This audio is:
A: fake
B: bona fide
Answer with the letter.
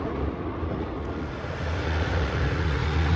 A